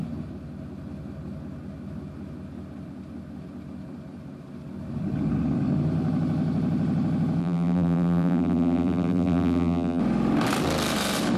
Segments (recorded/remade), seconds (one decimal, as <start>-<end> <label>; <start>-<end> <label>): 0.0-7.4 recorded; 7.4-10.0 remade; 10.0-11.4 recorded